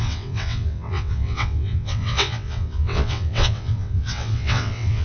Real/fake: fake